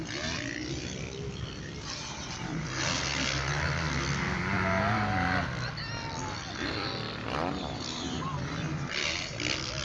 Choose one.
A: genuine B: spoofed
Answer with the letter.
A